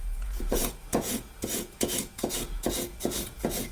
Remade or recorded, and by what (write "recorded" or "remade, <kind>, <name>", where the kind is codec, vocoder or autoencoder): remade, vocoder, Vocos